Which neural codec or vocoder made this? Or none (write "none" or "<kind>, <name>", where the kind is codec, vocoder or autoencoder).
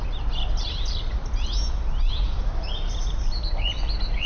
none